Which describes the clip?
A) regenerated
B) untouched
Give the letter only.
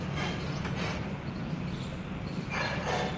B